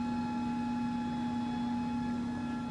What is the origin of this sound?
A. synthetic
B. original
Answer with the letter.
B